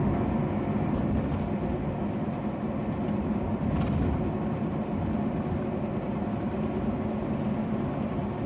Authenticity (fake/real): real